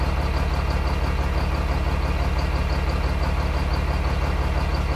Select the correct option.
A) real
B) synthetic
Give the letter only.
A